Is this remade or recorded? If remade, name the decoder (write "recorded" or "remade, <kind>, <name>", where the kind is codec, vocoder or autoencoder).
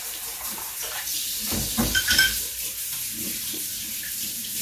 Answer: remade, vocoder, BigVGAN v2